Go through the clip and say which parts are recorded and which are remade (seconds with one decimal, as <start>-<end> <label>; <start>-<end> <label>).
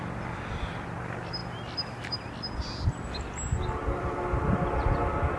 0.0-5.4 recorded